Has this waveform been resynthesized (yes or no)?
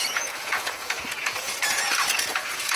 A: yes